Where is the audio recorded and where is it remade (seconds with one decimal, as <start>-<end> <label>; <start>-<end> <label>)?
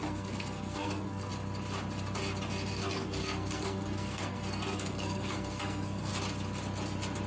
0.0-1.3 remade; 1.3-2.7 recorded; 2.7-6.1 remade; 6.1-7.3 recorded